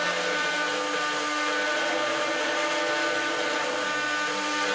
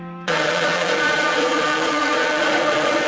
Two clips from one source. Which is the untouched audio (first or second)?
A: first